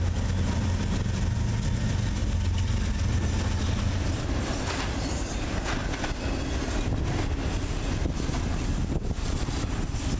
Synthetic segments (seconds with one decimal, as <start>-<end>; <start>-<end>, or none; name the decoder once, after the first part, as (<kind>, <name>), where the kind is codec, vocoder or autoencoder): none